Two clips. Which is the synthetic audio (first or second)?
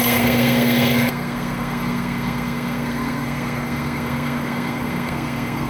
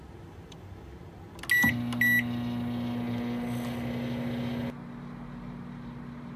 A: first